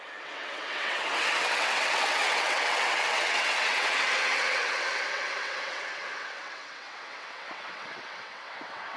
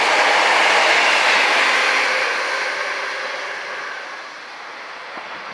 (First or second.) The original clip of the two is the second